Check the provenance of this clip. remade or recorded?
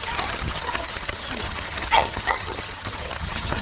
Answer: remade